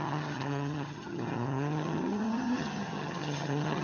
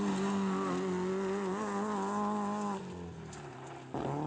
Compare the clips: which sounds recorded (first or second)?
second